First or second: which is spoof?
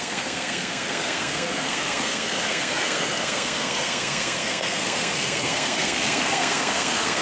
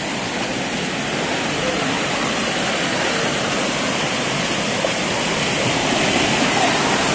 first